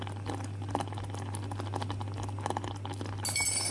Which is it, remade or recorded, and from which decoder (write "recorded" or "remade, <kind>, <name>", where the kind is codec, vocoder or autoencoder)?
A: recorded